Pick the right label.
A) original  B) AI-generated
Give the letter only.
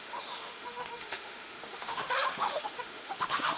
B